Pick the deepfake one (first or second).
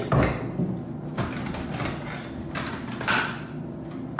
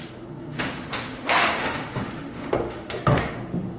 second